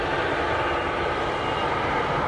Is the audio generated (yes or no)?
no